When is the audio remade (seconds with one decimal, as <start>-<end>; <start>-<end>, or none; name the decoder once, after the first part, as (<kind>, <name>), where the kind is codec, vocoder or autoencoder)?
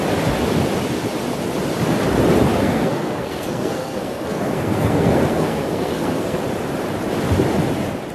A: 2.5-6.4 (codec, SNAC)